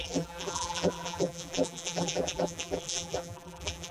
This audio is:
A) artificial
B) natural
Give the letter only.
A